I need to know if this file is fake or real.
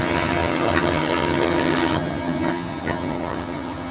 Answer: fake